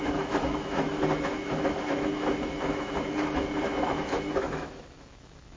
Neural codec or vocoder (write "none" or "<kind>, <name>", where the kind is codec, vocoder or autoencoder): autoencoder, DAC-VAE